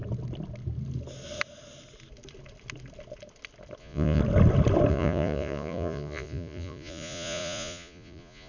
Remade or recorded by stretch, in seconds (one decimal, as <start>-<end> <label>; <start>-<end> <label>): 0.0-3.8 recorded; 3.8-4.2 remade; 4.2-4.9 recorded; 4.9-8.5 remade